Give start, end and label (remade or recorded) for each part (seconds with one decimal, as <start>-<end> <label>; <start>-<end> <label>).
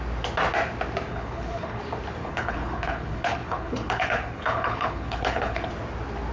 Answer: 0.0-1.1 recorded; 1.1-1.8 remade; 1.8-2.2 recorded; 2.2-5.7 remade; 5.7-6.3 recorded